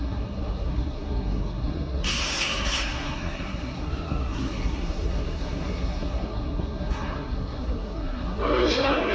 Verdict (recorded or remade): remade